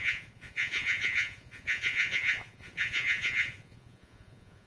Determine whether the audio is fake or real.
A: fake